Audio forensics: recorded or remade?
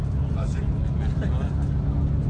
recorded